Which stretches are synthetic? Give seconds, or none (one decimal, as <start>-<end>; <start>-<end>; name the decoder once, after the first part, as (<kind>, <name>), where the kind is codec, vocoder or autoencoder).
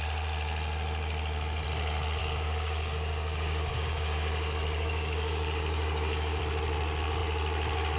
2.2-6.4 (codec, DAC)